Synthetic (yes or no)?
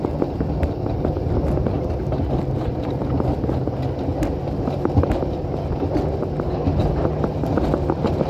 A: no